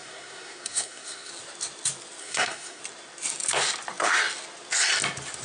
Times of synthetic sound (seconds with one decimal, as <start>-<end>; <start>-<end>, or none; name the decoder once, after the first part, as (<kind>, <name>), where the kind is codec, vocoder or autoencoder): 0.0-1.3 (codec, SNAC); 2.2-2.8